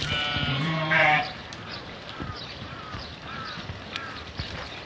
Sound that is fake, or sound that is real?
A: fake